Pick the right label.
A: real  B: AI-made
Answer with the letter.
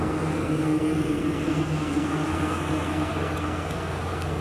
B